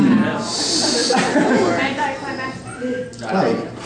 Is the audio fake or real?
real